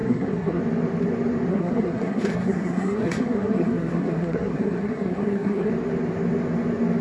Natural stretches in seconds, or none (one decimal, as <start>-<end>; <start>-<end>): 0.6-1.5; 5.7-7.0